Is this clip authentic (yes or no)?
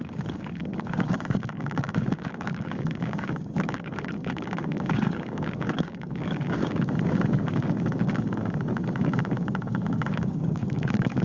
no